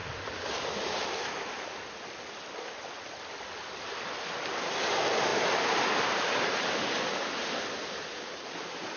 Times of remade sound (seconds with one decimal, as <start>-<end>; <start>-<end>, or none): none